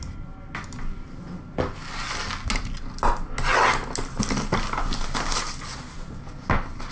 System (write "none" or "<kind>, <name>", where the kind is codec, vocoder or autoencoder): none